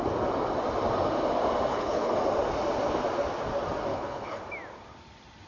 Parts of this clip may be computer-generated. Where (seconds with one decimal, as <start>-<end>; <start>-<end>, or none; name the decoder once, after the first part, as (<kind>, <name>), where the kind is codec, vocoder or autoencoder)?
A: 1.7-2.2 (codec, HILCodec); 3.9-4.4